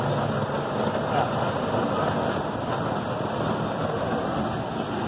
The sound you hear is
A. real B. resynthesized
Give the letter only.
A